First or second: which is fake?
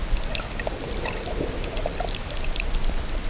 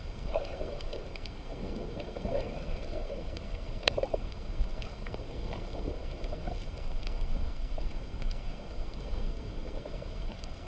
second